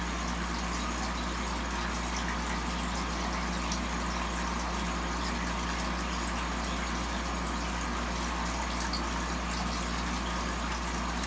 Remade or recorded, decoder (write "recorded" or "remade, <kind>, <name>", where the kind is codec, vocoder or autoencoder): recorded